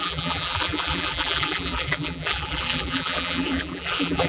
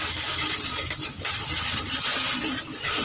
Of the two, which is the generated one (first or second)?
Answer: first